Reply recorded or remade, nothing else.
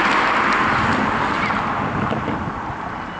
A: recorded